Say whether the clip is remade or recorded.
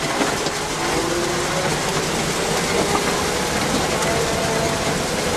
recorded